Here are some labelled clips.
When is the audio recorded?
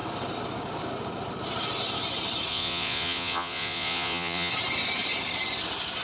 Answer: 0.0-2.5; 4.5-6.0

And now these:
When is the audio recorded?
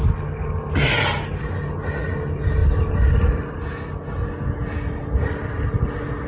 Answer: 0.0-6.3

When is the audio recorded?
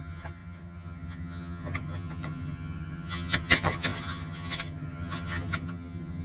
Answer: none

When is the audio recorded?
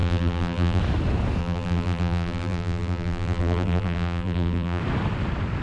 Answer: 0.8-1.4; 4.8-5.6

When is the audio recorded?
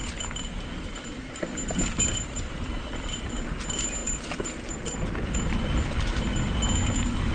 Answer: 3.3-4.0; 5.6-7.3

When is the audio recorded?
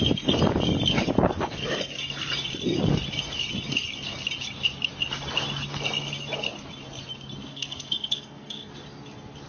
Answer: 0.0-7.5; 8.7-9.5